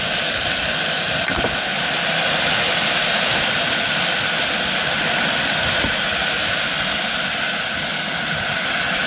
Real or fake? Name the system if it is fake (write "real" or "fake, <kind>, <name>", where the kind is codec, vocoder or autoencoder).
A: real